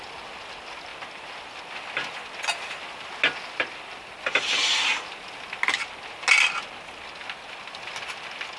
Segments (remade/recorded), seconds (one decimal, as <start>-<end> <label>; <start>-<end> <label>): 0.0-8.6 recorded